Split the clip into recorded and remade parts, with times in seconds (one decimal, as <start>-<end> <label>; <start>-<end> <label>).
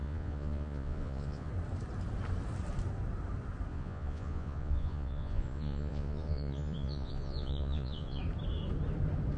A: 0.0-1.5 remade; 1.5-3.7 recorded; 3.7-8.2 remade; 8.2-9.4 recorded